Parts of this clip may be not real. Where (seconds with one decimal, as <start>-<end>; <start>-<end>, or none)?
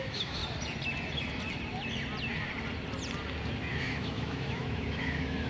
0.0-0.4; 3.7-5.5